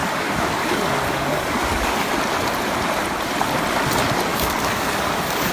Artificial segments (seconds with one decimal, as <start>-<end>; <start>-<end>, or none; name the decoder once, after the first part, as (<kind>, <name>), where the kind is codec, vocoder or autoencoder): 0.0-2.1 (codec, DAC); 4.3-5.5